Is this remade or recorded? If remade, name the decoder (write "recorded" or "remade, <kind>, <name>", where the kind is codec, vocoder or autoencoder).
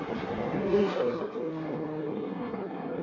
remade, codec, SNAC